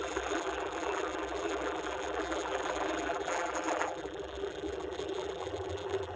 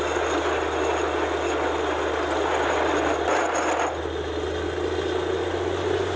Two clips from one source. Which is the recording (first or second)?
second